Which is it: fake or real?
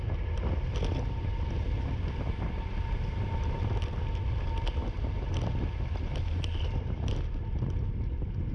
real